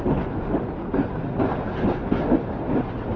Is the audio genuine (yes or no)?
yes